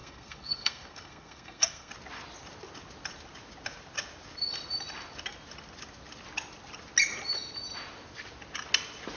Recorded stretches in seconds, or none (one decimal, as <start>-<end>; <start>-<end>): 1.9-9.2